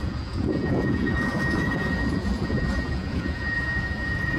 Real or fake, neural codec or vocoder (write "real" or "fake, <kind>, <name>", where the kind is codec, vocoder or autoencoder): fake, vocoder, Vocos